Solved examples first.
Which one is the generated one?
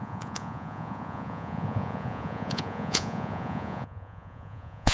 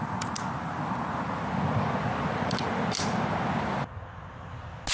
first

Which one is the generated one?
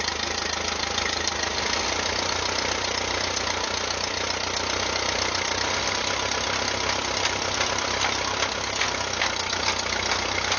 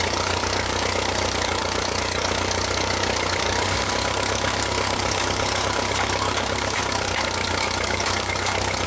second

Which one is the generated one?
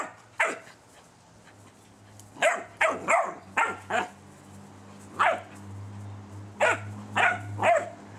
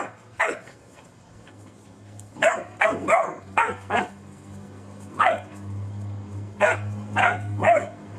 second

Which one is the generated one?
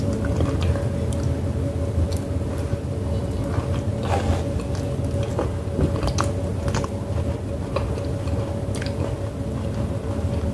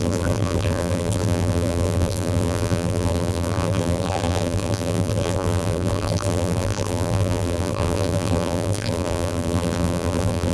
second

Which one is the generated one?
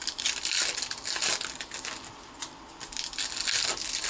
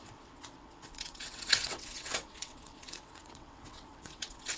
second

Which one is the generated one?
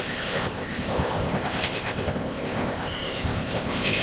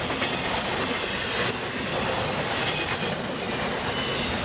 first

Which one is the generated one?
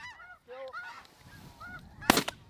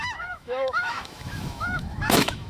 second